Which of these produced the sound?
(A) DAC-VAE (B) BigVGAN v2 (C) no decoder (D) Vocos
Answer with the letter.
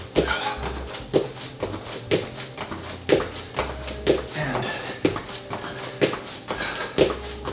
C